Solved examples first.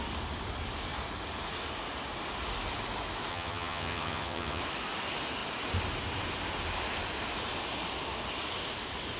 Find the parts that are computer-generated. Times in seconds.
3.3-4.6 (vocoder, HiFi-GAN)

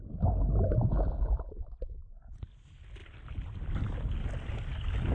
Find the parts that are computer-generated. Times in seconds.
none

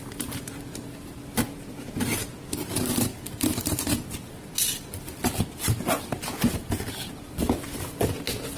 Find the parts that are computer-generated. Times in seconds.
none

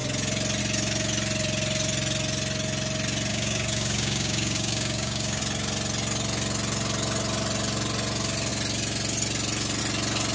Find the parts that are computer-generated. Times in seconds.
3.3-5.4 (codec, DAC)

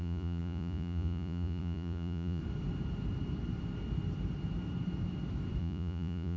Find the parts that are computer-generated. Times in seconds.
0.0-2.4 (vocoder, Vocos); 5.6-6.4

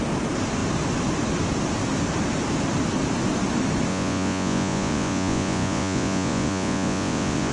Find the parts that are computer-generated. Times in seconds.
3.9-7.5 (vocoder, Vocos)

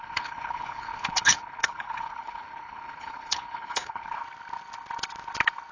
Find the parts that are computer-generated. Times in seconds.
0.0-4.2 (codec, HILCodec)

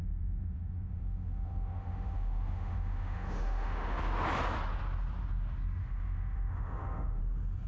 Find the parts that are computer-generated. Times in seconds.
0.0-4.0 (autoencoder, DAC-VAE); 5.8-7.2